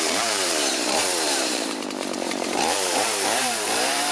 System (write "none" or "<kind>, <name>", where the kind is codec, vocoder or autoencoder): vocoder, BigVGAN v2